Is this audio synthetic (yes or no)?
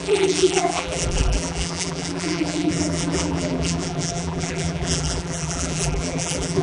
yes